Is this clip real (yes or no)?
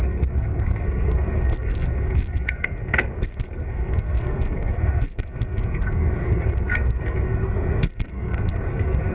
no